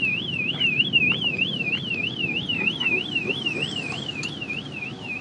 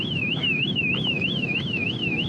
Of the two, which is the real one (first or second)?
first